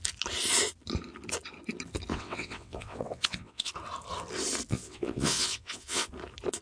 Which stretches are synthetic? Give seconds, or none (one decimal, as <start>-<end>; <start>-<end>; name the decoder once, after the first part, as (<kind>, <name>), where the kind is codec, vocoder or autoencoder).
2.1-3.7 (vocoder, WaveNeXt); 4.7-6.1